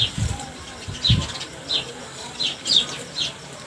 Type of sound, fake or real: fake